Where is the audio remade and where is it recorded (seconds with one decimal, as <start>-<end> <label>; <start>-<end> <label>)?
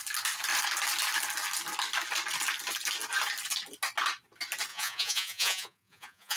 0.0-4.7 recorded; 4.7-6.4 remade